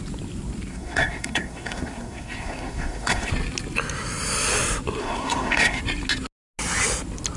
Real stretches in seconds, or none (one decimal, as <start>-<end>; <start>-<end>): 0.0-0.7; 3.3-5.0; 5.8-7.4